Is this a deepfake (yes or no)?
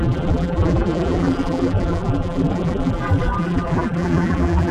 yes